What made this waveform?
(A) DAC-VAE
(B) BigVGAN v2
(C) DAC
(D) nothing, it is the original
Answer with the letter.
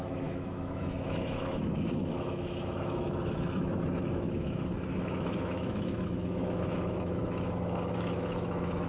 A